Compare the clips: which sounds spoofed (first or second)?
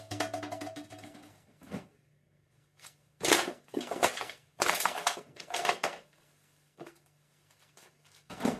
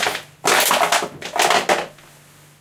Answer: first